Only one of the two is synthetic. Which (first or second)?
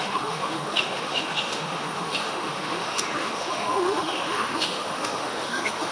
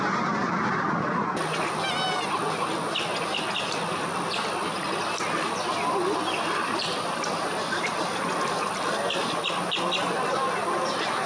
first